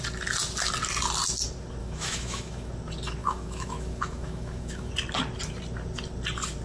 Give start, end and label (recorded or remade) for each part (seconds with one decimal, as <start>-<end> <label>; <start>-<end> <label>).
0.0-1.8 recorded; 1.8-2.7 remade; 2.7-3.2 recorded; 3.2-4.9 remade; 4.9-6.6 recorded